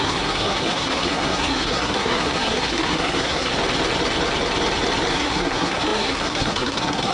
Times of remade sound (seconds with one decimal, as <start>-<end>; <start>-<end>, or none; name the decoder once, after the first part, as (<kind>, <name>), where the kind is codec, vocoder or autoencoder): 0.0-3.5 (codec, SNAC); 5.1-7.1